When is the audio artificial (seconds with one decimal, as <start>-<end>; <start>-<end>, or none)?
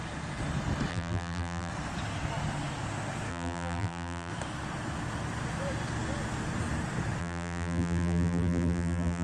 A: 0.9-1.7; 3.3-4.3; 7.2-9.2